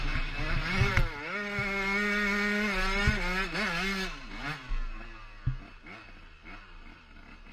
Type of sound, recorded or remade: recorded